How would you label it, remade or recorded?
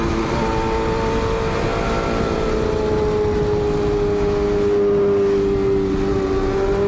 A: recorded